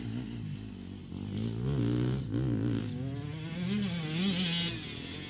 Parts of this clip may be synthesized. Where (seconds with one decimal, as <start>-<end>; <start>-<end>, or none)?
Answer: none